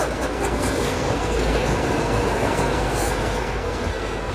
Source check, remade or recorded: remade